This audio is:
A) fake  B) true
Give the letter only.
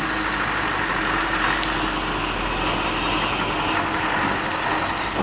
B